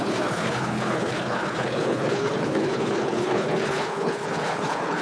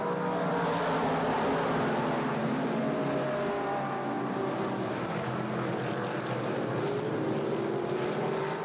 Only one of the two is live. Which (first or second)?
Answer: second